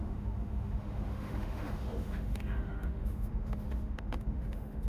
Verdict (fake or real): fake